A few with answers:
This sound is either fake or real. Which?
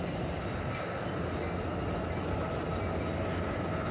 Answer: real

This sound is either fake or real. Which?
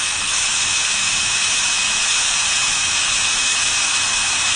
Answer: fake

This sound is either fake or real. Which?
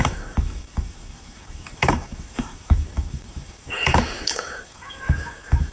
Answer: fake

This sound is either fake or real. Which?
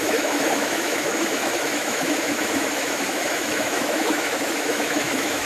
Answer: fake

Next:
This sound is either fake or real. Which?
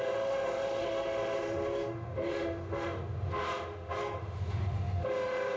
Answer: fake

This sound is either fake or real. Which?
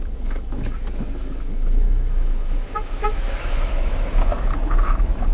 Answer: fake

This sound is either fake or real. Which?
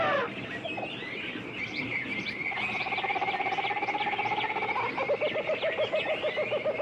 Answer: real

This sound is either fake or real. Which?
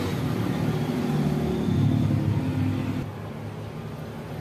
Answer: real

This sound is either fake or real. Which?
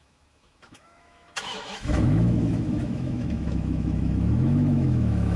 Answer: fake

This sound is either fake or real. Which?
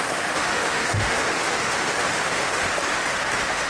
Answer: fake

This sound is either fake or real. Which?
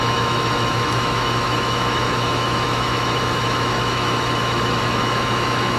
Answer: fake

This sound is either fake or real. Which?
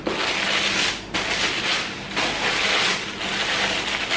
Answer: real